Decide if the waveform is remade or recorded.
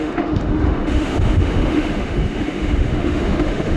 remade